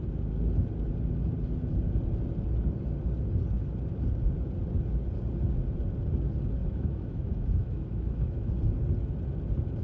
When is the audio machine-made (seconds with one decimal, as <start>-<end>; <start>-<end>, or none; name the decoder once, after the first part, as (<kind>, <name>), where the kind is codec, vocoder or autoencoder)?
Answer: 6.6-8.5 (autoencoder, DAC-VAE)